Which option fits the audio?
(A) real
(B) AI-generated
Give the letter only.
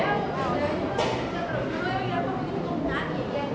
A